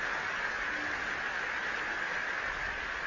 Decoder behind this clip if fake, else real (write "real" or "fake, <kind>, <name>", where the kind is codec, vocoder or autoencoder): real